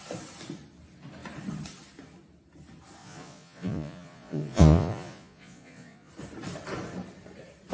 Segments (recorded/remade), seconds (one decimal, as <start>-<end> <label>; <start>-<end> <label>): 0.0-3.0 recorded; 3.0-6.1 remade; 6.1-7.7 recorded

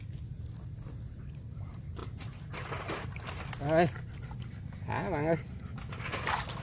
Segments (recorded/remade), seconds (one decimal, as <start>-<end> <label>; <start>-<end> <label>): 0.0-6.6 recorded

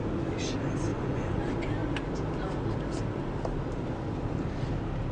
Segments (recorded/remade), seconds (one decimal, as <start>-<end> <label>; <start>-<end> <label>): 0.0-0.9 recorded; 0.9-1.4 remade; 1.4-5.1 recorded

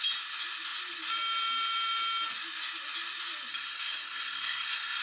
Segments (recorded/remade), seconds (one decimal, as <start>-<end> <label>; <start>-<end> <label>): 0.0-3.5 recorded; 3.5-5.0 remade

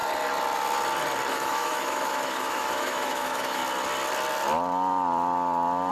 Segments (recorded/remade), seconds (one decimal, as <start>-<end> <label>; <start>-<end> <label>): 0.0-1.3 recorded; 1.3-3.6 remade; 3.6-5.9 recorded

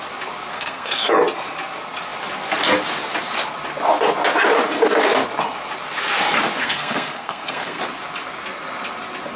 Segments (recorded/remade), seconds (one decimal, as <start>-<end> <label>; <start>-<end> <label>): 0.0-0.5 recorded; 0.5-1.1 remade; 1.1-6.6 recorded; 6.6-7.8 remade; 7.8-9.4 recorded